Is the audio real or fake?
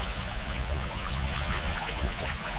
fake